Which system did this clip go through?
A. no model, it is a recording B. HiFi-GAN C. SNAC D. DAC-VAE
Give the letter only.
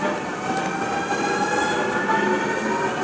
A